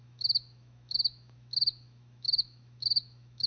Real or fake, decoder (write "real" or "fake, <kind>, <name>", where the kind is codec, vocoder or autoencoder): fake, autoencoder, DAC-VAE